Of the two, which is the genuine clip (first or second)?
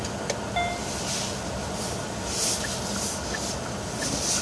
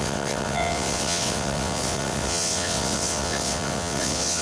first